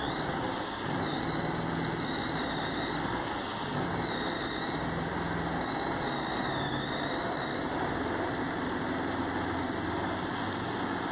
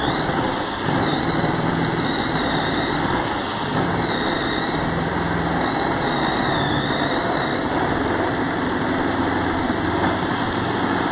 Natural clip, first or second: first